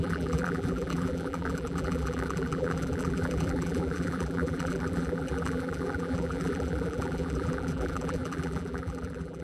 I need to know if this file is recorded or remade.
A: remade